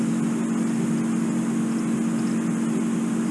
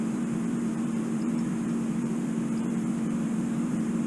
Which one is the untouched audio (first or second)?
first